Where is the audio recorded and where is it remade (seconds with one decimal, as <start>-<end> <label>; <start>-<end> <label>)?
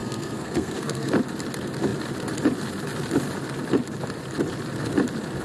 0.0-1.1 remade; 1.1-5.4 recorded